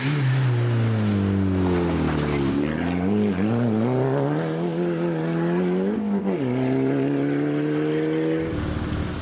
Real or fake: real